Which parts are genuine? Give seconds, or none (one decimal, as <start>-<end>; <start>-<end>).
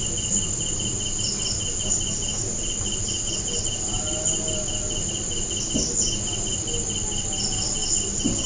0.0-8.5